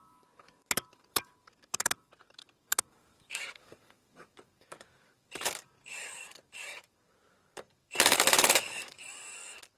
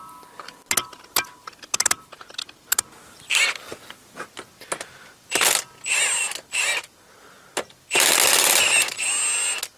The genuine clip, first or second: second